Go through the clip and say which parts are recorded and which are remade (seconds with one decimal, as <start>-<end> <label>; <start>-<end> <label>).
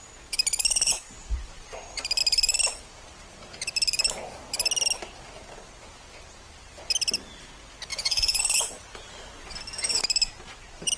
0.0-7.9 recorded; 7.9-8.4 remade; 8.4-11.0 recorded